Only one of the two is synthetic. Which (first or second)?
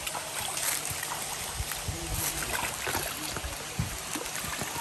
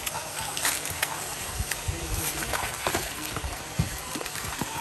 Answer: second